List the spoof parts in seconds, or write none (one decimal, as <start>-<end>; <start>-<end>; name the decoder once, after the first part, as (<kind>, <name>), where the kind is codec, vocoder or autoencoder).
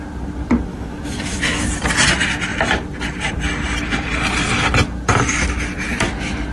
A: 0.7-1.7 (autoencoder, DAC-VAE)